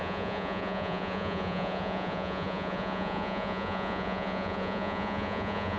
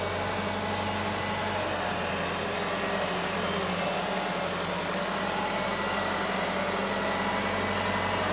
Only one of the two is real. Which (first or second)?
second